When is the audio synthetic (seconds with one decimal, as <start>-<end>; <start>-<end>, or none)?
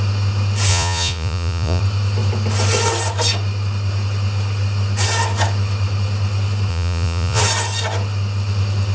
0.7-1.8; 6.7-7.4